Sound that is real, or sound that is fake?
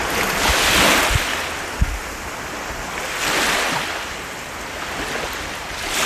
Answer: real